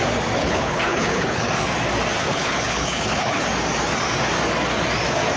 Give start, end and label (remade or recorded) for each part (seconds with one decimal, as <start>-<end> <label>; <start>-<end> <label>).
0.0-0.4 recorded; 0.4-1.5 remade; 1.5-2.2 recorded; 2.2-3.4 remade; 3.4-5.4 recorded